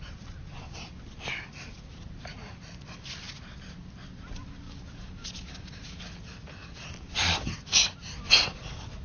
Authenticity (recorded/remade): recorded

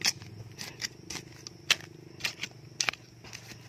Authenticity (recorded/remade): recorded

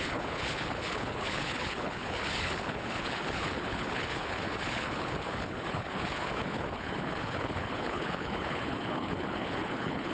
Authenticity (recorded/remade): remade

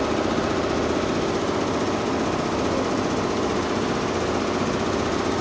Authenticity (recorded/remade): recorded